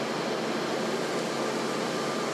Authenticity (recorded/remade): recorded